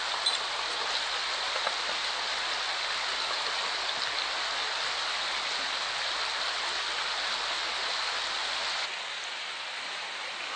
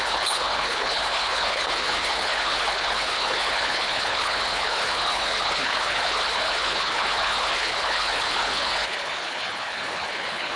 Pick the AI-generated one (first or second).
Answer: second